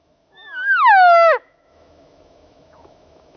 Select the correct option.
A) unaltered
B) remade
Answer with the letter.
B